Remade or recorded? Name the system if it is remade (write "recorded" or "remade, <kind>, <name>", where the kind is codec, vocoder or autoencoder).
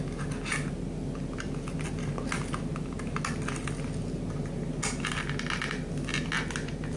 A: recorded